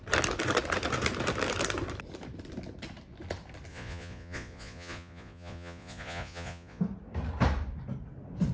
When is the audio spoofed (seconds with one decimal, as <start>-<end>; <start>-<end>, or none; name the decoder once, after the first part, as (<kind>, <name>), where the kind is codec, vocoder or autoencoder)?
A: 3.7-6.8 (vocoder, Vocos)